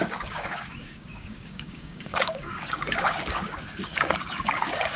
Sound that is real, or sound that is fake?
fake